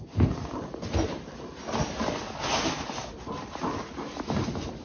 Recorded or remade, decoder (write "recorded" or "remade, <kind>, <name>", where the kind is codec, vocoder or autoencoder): recorded